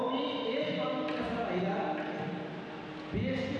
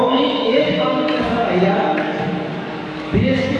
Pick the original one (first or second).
first